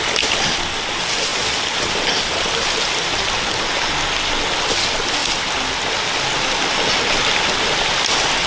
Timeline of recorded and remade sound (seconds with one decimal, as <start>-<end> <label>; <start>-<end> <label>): 0.0-8.5 recorded